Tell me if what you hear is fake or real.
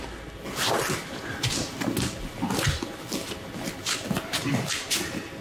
real